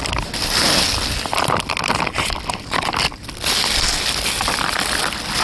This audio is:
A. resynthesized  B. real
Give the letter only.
B